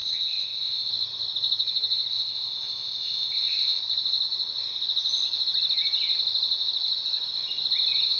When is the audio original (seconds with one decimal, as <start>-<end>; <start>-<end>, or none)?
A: 0.9-2.1; 3.8-8.2